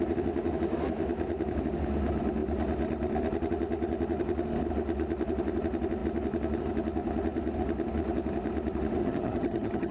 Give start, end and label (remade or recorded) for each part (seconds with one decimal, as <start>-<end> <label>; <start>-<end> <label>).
0.0-9.0 recorded; 9.0-9.9 remade